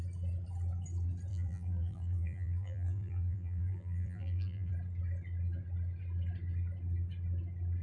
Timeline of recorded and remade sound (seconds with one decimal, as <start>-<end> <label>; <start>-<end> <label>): 0.0-1.3 recorded; 1.3-4.7 remade; 4.7-7.8 recorded